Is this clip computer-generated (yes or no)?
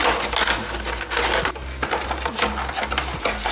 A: no